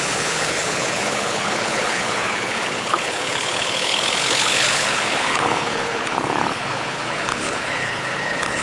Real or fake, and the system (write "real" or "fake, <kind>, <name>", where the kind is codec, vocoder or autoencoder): fake, codec, HILCodec